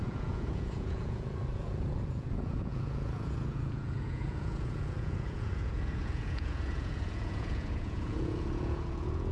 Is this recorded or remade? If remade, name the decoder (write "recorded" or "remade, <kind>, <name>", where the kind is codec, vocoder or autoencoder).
remade, vocoder, Vocos